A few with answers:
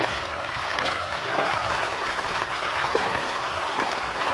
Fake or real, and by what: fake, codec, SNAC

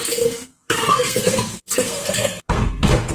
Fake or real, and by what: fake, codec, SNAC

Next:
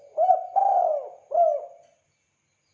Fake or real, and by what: real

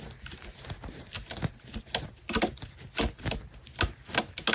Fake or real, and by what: real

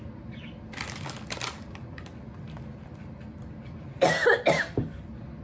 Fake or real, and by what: real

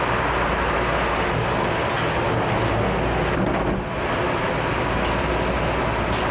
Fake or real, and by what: real